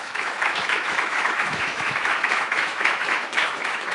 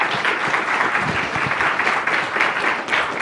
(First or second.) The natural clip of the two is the second